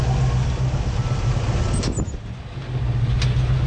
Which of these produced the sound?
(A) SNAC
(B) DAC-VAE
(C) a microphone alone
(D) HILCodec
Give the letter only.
C